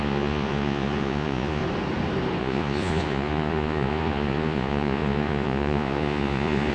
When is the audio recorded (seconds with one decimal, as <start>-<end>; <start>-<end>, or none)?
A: 1.6-2.4

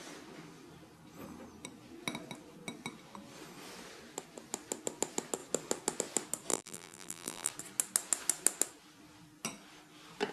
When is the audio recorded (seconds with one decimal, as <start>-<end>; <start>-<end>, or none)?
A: 0.0-6.5; 7.5-10.3

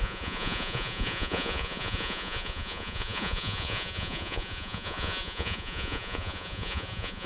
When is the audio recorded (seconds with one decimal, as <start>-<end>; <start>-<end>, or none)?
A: none

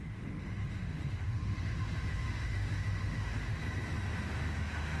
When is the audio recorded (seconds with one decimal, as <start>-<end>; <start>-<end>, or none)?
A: 3.6-4.3

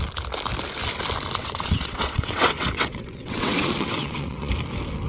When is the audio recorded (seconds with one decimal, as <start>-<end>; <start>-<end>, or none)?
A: 0.0-1.4; 4.5-5.1

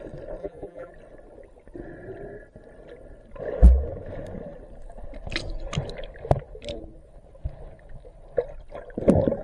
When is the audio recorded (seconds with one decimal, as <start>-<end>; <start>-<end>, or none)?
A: 0.0-0.4; 0.9-9.4